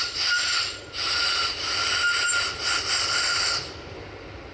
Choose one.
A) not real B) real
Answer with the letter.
B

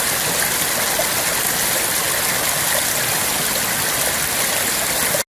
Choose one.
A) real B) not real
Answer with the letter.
A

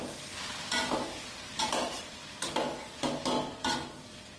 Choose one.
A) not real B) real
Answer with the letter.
B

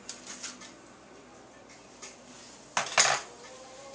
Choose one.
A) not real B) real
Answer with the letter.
B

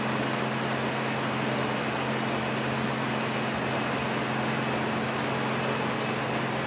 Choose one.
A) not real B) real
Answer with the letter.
B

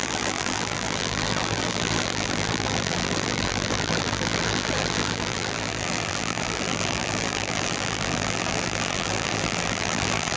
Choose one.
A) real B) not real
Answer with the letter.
B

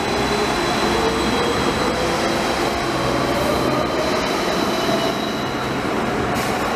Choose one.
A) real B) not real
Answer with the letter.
A